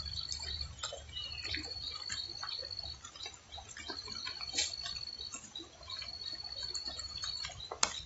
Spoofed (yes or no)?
no